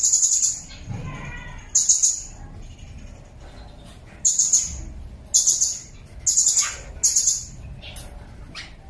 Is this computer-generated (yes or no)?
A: no